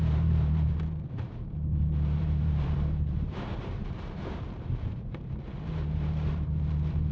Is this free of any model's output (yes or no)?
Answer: no